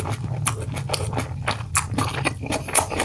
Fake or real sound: real